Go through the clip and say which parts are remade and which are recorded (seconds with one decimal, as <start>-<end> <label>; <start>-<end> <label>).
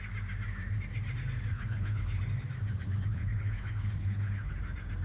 0.0-1.5 recorded; 1.5-2.2 remade; 2.2-3.1 recorded; 3.1-4.5 remade; 4.5-5.0 recorded